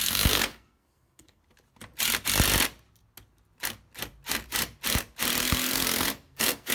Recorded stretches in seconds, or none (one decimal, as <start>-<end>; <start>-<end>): 1.4-5.4

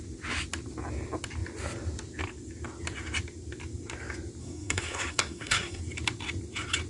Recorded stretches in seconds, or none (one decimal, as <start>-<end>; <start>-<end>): 0.0-4.4; 5.8-6.9

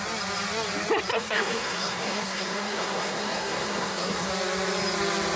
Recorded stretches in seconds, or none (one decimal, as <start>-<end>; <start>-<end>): 0.0-1.1; 4.3-5.4

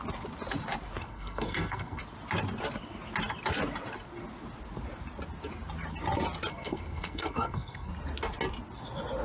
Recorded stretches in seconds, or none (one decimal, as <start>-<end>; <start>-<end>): 0.0-1.0; 2.0-6.5; 7.9-9.2

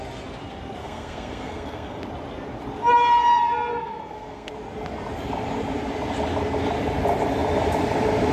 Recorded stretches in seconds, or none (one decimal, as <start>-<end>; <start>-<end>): 0.0-0.8; 2.0-3.7; 4.5-8.3

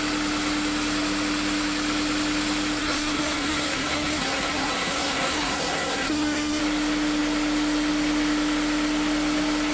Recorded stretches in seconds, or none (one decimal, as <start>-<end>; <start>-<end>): 0.0-2.8; 6.6-9.7

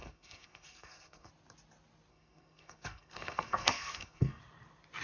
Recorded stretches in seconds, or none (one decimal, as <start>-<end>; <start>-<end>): 1.3-2.1; 4.4-5.0